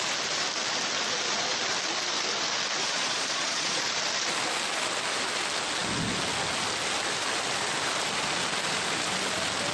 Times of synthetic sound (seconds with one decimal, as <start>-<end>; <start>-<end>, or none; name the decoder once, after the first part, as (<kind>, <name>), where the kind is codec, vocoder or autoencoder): 2.8-3.8 (vocoder, Vocos)